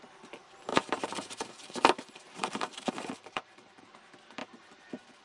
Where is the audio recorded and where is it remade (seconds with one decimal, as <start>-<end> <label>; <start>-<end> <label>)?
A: 0.0-0.7 recorded; 0.7-3.8 remade; 3.8-4.4 recorded; 4.4-5.2 remade